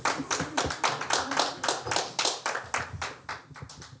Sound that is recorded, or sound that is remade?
recorded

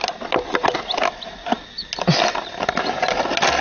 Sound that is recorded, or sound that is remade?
recorded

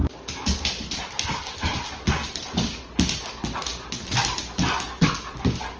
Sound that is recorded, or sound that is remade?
recorded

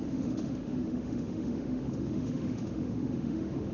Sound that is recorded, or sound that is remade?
remade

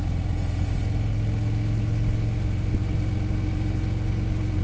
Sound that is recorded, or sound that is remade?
recorded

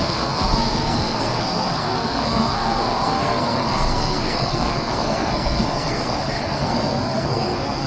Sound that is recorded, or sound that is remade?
remade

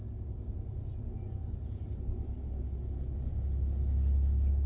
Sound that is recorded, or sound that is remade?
recorded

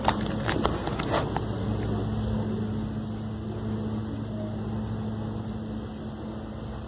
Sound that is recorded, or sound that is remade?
recorded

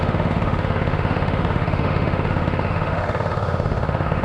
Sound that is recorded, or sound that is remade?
remade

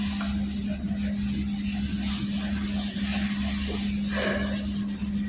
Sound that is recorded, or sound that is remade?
recorded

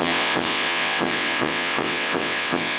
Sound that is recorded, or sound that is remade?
remade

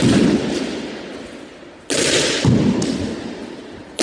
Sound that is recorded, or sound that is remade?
recorded